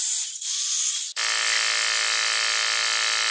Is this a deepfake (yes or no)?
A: no